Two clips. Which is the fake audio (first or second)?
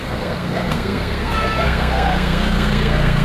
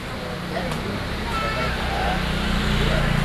first